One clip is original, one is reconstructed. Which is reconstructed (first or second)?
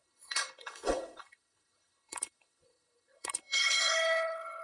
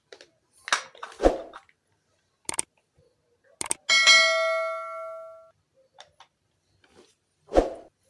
first